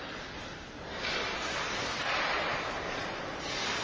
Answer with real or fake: real